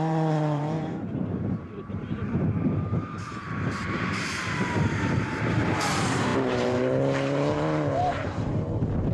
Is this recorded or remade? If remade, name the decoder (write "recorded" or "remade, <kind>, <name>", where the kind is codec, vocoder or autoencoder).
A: remade, vocoder, BigVGAN v2